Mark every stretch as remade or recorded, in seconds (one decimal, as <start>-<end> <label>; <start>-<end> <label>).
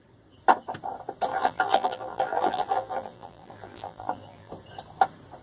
0.0-1.3 recorded; 1.3-4.5 remade; 4.5-5.4 recorded